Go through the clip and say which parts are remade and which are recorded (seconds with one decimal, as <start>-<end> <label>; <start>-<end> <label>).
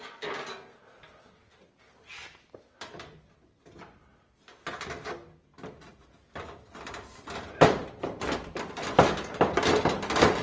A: 0.0-4.0 remade; 4.0-4.7 recorded; 4.7-10.4 remade